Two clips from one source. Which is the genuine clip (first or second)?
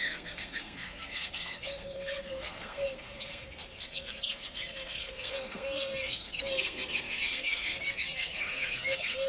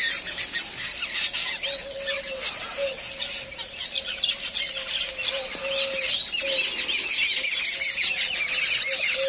second